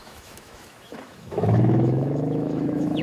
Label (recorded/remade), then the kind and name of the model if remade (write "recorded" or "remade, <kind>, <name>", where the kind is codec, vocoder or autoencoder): remade, autoencoder, DAC-VAE